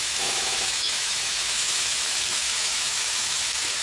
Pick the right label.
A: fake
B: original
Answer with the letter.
A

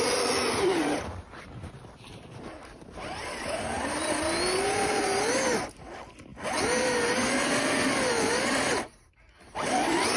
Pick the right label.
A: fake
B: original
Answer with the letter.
B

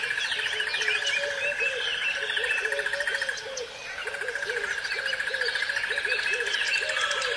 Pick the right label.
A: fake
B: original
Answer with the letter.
B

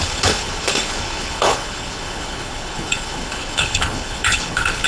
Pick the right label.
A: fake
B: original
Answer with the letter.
A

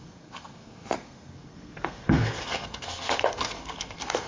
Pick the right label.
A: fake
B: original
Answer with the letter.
A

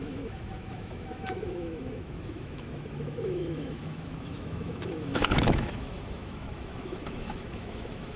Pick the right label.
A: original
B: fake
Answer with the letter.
B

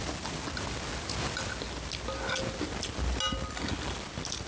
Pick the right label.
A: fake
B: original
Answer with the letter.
B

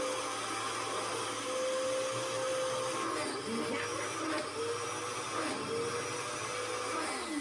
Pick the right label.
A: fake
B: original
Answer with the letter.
B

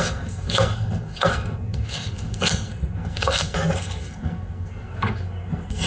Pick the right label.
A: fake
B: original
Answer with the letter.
A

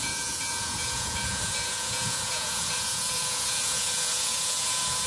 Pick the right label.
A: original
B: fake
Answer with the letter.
B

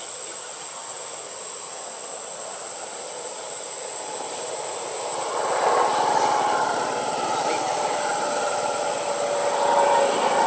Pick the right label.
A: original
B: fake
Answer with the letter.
A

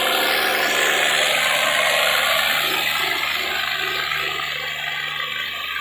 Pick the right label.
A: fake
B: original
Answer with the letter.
B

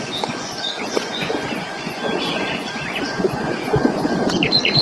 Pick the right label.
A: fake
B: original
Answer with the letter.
A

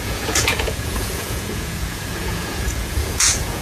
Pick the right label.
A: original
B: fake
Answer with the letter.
B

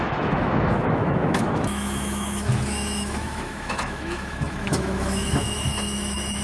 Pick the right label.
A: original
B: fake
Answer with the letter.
B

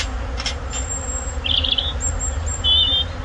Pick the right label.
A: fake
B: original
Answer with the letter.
B